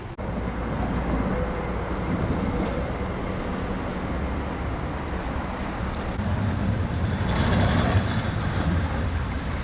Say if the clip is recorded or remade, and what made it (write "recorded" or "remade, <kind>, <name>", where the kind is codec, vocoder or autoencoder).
recorded